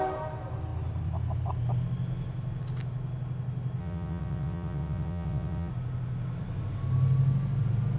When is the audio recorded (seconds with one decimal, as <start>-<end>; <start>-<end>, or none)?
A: 0.0-3.8; 5.7-8.0